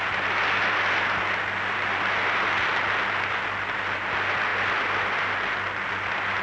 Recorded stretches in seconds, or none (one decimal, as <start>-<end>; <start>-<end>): 0.0-6.4

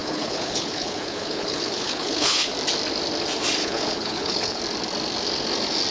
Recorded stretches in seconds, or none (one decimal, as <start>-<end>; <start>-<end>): 2.5-3.6; 4.6-5.9

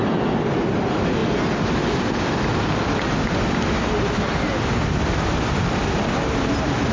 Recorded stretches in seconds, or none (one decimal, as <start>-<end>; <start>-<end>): 0.0-6.9

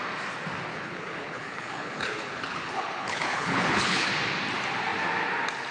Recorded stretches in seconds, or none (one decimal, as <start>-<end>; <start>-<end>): 0.0-0.7; 4.1-5.7

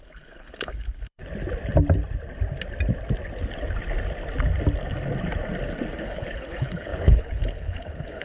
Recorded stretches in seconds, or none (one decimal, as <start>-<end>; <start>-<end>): 1.2-6.0